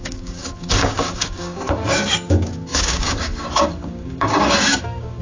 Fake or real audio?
fake